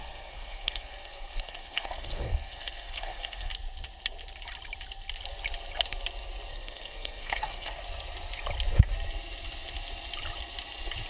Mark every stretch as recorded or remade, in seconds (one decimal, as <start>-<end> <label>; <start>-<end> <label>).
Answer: 0.0-3.5 remade; 3.5-6.5 recorded; 6.5-7.7 remade; 7.7-11.1 recorded